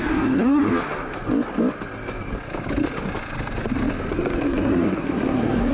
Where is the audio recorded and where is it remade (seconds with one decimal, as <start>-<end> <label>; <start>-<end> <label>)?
0.0-0.7 remade; 0.7-4.1 recorded; 4.1-5.7 remade